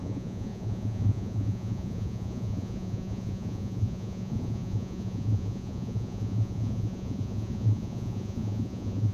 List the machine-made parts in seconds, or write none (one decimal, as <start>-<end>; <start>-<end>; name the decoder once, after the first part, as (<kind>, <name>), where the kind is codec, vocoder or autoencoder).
0.0-9.1 (vocoder, Vocos)